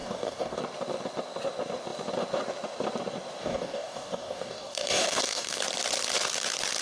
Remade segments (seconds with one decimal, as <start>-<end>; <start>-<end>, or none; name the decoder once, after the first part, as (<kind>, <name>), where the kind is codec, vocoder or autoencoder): 0.0-0.6 (codec, DAC); 3.4-5.6